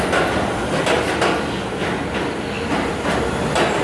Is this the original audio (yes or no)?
yes